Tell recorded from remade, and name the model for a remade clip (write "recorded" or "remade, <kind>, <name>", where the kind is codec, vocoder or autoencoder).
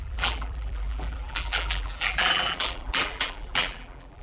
remade, vocoder, BigVGAN v2